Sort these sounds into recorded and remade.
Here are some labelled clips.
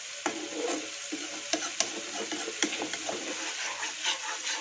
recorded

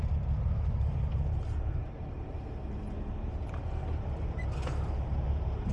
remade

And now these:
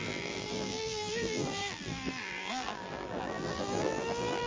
remade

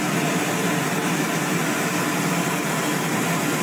recorded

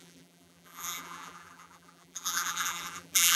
remade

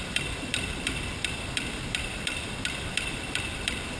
remade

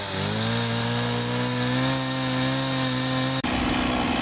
recorded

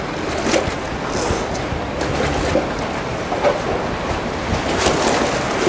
recorded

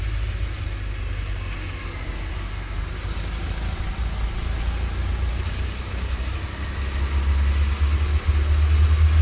recorded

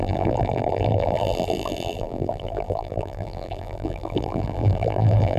remade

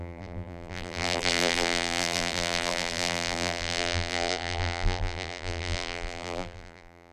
remade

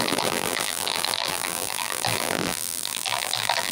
remade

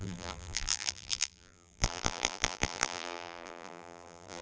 remade